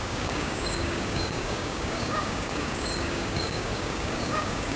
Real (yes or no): no